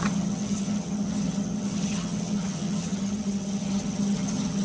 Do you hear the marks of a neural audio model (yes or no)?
yes